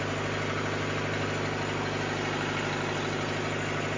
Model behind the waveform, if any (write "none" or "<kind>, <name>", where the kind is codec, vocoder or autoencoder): none